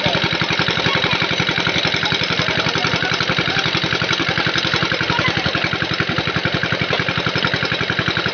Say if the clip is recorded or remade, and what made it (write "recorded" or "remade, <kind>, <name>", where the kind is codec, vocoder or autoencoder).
recorded